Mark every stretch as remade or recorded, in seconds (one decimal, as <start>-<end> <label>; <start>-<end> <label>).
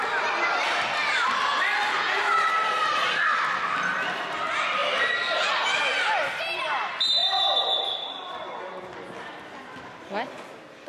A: 0.0-2.5 remade; 2.5-10.9 recorded